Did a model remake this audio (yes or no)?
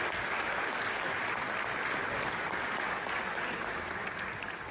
no